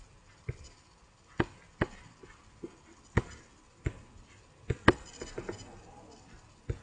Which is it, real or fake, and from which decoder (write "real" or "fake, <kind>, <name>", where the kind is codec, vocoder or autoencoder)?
real